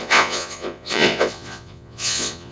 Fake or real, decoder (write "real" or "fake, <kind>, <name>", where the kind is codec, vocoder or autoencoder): fake, vocoder, Vocos